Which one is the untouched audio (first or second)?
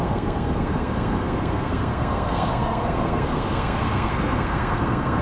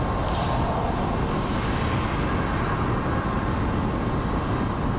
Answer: second